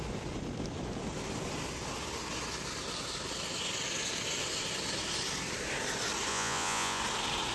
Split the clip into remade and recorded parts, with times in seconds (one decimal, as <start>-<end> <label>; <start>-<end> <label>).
0.0-6.3 recorded; 6.3-7.0 remade; 7.0-7.5 recorded